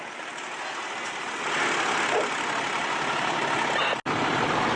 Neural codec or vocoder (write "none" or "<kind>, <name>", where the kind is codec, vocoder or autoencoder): none